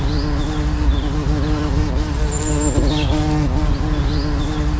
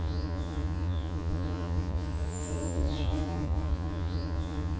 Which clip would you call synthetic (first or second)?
second